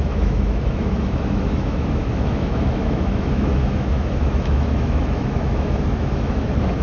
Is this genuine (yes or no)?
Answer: no